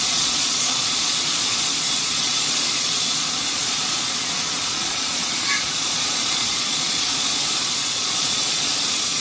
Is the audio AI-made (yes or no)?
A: yes